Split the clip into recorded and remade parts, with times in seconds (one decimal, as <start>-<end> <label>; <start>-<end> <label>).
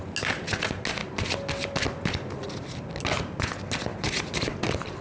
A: 0.0-1.0 recorded; 1.0-1.7 remade; 1.7-3.9 recorded; 3.9-4.6 remade; 4.6-5.0 recorded